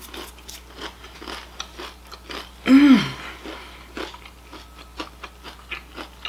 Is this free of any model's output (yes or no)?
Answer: yes